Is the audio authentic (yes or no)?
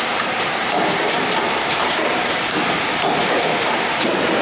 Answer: no